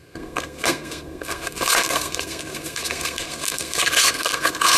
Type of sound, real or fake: fake